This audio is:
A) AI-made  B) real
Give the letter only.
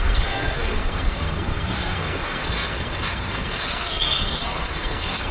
A